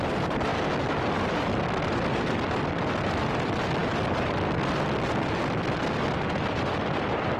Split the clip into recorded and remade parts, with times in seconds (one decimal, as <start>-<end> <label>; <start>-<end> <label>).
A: 0.0-7.4 recorded